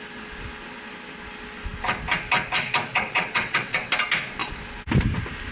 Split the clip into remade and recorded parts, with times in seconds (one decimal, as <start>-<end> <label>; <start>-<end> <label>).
0.0-2.9 recorded; 2.9-3.9 remade; 3.9-5.5 recorded